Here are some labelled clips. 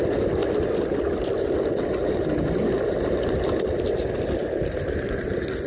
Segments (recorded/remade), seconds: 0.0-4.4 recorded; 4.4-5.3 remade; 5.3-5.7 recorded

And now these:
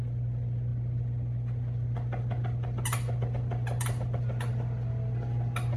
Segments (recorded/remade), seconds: 0.0-5.8 recorded

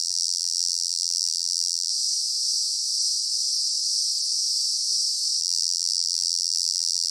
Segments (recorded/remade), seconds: 0.0-1.9 remade; 1.9-5.4 recorded; 5.4-7.1 remade

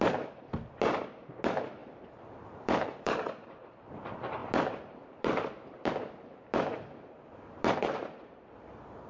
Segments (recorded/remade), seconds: 0.0-1.8 recorded; 1.8-3.9 remade; 3.9-9.1 recorded

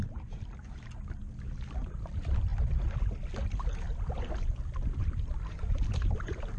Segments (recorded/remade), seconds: 0.0-2.5 remade; 2.5-5.0 recorded; 5.0-6.6 remade

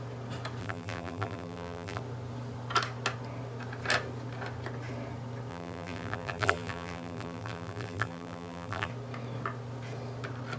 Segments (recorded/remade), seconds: 0.0-0.6 recorded; 0.6-2.0 remade; 2.0-5.5 recorded; 5.5-8.9 remade; 8.9-10.6 recorded